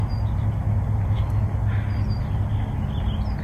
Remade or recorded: recorded